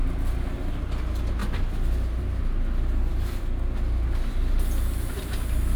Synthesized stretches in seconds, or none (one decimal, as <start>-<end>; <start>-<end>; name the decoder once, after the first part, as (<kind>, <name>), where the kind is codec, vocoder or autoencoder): none